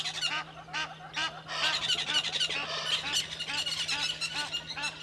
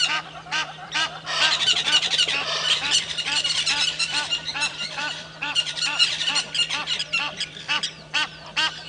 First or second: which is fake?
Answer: second